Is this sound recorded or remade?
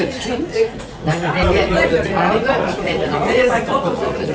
remade